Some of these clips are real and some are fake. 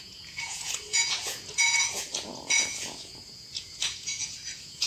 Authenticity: fake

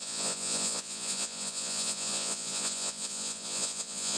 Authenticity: fake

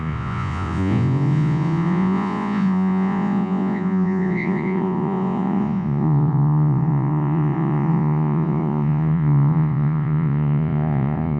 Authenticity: fake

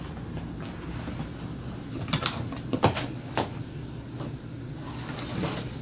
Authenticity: real